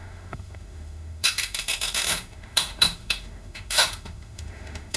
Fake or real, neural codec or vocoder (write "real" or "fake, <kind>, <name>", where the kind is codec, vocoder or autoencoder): fake, autoencoder, DAC-VAE